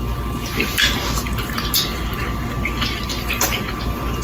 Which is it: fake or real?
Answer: real